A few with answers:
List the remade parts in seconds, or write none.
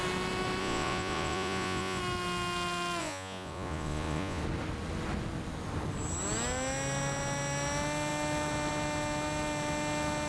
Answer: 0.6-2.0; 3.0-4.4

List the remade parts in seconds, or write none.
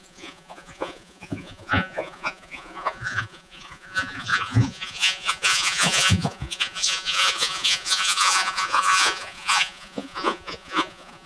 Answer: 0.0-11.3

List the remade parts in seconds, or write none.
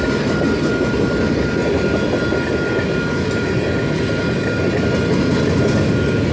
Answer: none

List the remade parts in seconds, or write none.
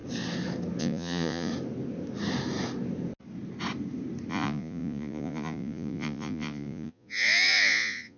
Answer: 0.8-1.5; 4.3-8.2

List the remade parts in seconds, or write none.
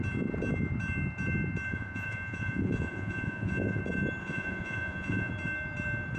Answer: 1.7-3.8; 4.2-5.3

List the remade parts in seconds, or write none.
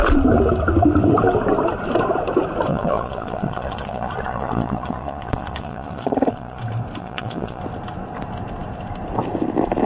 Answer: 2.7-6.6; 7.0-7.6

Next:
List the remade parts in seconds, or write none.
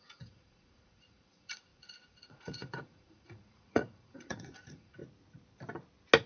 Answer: 0.0-5.0